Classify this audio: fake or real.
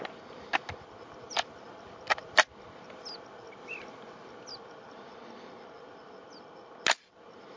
real